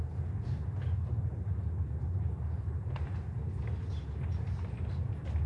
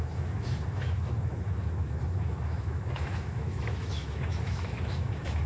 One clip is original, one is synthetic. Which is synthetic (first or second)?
second